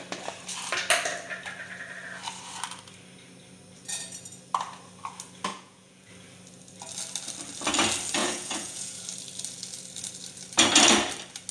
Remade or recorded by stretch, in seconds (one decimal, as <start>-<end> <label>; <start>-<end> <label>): 0.0-5.5 recorded; 5.5-6.1 remade; 6.1-8.2 recorded; 8.2-9.0 remade; 9.0-11.5 recorded